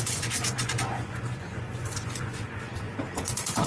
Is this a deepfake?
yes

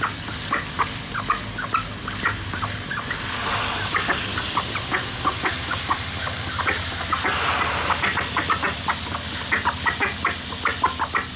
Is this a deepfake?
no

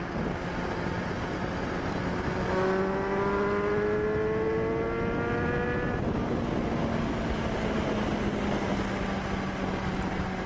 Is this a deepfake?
no